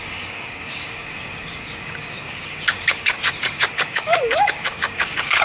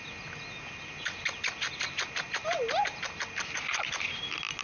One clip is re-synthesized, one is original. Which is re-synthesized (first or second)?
first